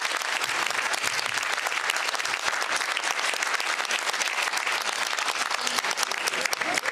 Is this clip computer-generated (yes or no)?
no